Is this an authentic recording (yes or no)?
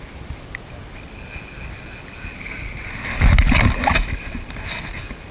yes